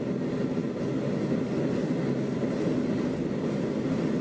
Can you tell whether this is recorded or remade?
recorded